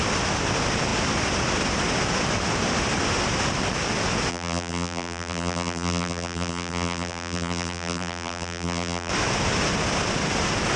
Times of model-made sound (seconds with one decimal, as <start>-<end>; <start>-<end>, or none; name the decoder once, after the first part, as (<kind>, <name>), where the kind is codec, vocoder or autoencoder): 4.3-9.1 (vocoder, BigVGAN v2)